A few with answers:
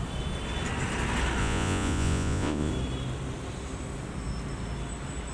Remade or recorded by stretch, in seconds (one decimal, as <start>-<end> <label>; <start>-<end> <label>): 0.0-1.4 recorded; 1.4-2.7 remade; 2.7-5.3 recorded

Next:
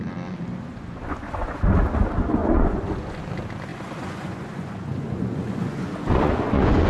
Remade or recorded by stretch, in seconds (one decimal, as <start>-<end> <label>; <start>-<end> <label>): 0.0-0.7 recorded; 0.7-1.6 remade; 1.6-2.4 recorded; 2.4-3.2 remade; 3.2-3.7 recorded; 3.7-6.9 remade

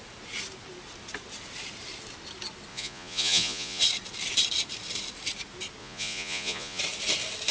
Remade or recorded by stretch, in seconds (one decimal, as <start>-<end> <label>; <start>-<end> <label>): 0.0-2.7 recorded; 2.7-3.8 remade; 3.8-5.8 recorded; 5.8-6.8 remade; 6.8-7.5 recorded